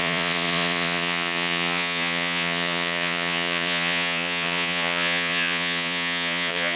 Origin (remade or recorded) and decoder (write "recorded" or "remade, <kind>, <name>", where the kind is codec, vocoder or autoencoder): remade, vocoder, Vocos